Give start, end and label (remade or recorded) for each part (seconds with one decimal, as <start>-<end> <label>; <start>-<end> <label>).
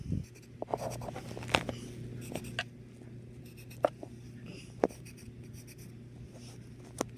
0.0-4.5 recorded; 4.5-5.3 remade; 5.3-7.2 recorded